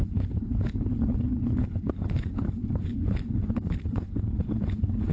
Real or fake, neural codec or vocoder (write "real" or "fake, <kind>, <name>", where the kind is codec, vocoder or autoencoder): fake, codec, HILCodec